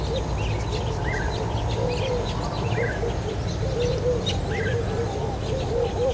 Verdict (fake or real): real